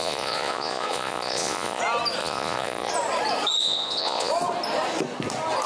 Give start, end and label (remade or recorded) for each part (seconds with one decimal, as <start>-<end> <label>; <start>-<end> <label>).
0.0-1.8 remade; 1.8-2.2 recorded; 2.2-2.9 remade; 2.9-3.6 recorded; 3.6-4.3 remade; 4.3-5.7 recorded